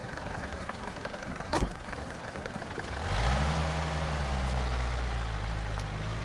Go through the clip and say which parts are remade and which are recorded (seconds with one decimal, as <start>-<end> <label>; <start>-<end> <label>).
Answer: 0.0-2.6 remade; 2.6-6.2 recorded